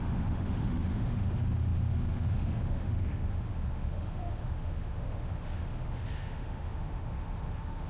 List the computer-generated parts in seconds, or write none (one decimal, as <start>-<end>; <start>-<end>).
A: 0.0-7.9